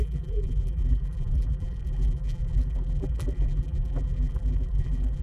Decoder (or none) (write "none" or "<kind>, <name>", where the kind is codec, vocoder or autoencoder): vocoder, BigVGAN v2